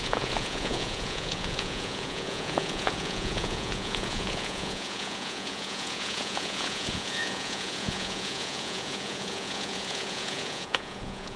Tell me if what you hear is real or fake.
fake